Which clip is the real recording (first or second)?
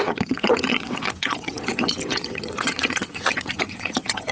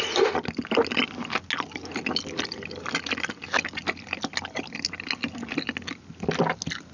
second